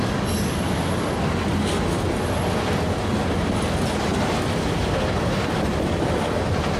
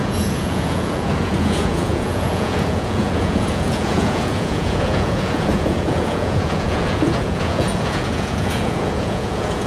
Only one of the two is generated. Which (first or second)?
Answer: second